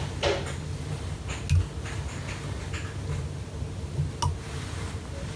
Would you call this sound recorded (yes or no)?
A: yes